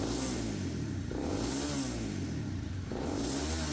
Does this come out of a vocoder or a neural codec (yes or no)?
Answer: no